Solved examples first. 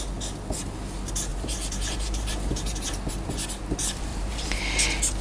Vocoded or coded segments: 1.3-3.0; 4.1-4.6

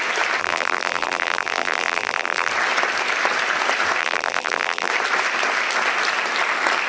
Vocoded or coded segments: 0.4-2.5; 4.0-4.9

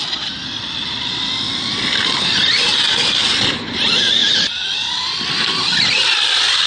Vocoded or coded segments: none

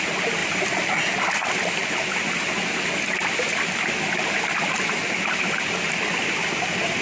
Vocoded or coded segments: none